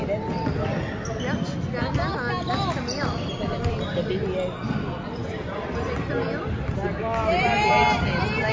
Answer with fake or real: real